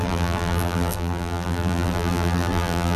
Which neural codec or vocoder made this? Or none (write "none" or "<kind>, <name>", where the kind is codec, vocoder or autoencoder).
vocoder, BigVGAN v2